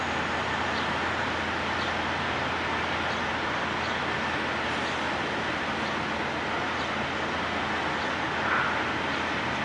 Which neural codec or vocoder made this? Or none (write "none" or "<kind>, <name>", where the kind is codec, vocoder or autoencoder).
none